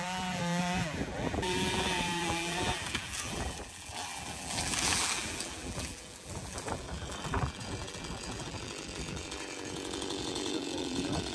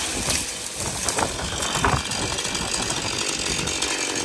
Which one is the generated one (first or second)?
first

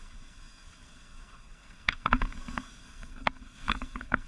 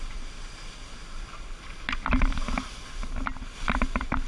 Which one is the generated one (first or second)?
first